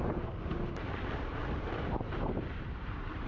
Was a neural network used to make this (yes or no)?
yes